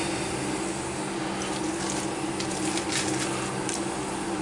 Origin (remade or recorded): recorded